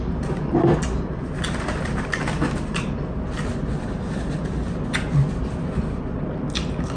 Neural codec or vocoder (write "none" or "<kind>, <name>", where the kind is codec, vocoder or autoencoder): none